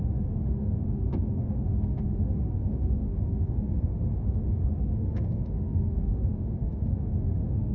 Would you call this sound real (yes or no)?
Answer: no